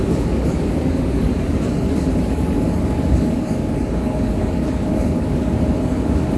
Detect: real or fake fake